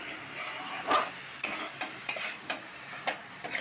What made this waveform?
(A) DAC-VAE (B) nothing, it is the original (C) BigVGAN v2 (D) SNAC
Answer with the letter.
B